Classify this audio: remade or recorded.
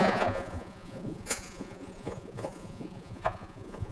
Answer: remade